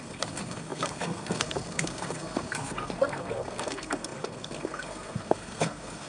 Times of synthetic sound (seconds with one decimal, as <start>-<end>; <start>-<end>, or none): 0.0-6.1